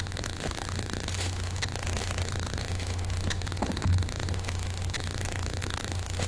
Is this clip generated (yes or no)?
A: yes